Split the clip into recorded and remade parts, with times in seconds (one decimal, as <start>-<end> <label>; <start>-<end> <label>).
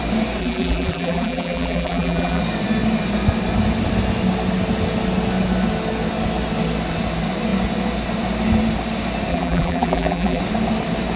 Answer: 0.0-0.4 recorded; 0.4-2.4 remade; 2.4-9.3 recorded; 9.3-10.4 remade; 10.4-11.2 recorded